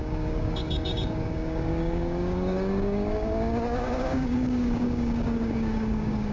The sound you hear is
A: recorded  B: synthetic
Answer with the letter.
B